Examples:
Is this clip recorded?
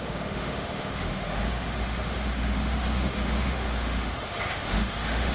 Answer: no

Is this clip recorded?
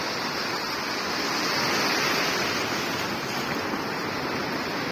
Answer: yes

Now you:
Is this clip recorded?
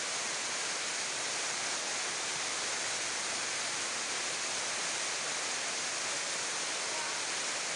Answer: yes